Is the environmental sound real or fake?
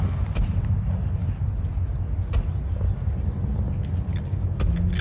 real